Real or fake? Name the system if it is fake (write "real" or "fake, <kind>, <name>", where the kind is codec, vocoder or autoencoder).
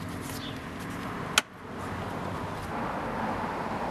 real